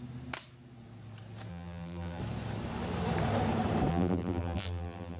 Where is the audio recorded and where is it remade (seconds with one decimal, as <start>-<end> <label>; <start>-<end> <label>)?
0.0-1.5 recorded; 1.5-2.2 remade; 2.2-3.9 recorded; 3.9-5.2 remade